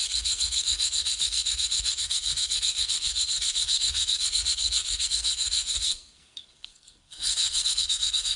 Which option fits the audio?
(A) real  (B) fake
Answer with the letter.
B